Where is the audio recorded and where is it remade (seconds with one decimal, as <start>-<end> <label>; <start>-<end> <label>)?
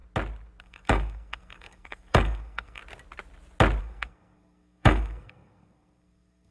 0.0-0.6 recorded; 0.6-2.8 remade; 2.8-3.8 recorded; 3.8-6.5 remade